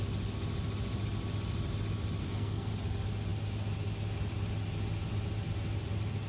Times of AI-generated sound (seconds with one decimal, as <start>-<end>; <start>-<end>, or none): 2.2-2.7